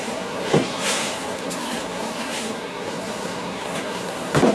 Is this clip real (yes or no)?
no